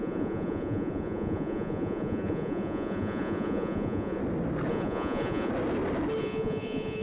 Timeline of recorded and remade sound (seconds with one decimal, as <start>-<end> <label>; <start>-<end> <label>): 0.0-4.2 remade; 4.2-4.7 recorded; 4.7-5.5 remade; 5.5-6.2 recorded; 6.2-7.0 remade